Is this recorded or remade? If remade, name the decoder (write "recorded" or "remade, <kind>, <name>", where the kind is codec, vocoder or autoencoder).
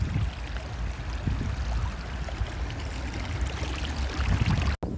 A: recorded